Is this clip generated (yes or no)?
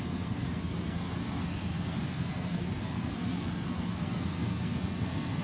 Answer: yes